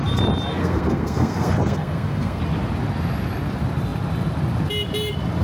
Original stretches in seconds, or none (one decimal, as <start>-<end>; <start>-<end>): 0.0-0.6; 2.4-5.4